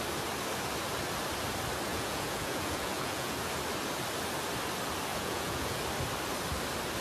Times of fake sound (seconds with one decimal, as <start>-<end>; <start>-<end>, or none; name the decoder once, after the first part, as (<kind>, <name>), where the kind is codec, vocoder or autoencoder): 1.9-3.5 (vocoder, Vocos); 5.1-5.8